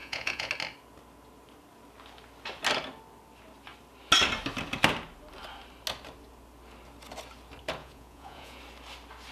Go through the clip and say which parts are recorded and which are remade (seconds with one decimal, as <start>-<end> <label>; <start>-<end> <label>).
0.0-0.5 remade; 0.5-7.8 recorded; 7.8-8.6 remade; 8.6-9.3 recorded

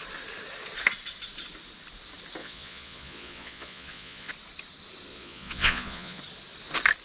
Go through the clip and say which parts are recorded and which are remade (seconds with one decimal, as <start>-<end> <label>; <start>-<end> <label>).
0.0-2.4 recorded; 2.4-4.3 remade; 4.3-5.1 recorded; 5.1-6.2 remade; 6.2-7.0 recorded

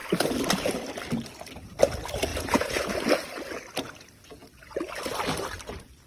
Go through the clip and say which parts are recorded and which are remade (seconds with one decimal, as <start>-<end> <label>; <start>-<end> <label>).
0.0-2.3 recorded; 2.3-2.9 remade; 2.9-6.1 recorded

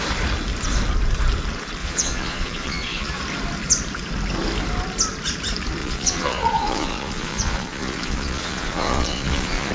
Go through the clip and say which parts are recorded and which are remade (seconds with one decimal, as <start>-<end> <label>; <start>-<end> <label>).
0.0-1.8 recorded; 1.8-3.2 remade; 3.2-5.8 recorded; 5.8-9.7 remade

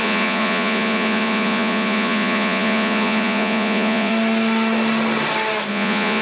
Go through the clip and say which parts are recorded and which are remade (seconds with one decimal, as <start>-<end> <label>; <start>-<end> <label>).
0.0-4.1 remade; 4.1-5.7 recorded; 5.7-6.2 remade

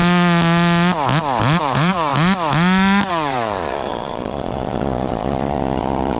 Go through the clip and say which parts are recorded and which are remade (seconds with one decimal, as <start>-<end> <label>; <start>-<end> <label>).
0.0-1.6 recorded; 1.6-2.1 remade; 2.1-3.1 recorded; 3.1-6.2 remade

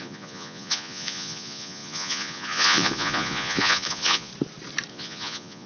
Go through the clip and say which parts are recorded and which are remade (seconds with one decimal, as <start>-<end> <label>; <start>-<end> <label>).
0.0-4.3 remade; 4.3-4.9 recorded; 4.9-5.7 remade